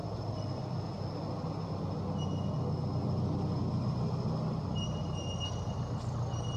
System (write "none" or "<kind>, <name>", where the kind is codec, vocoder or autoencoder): none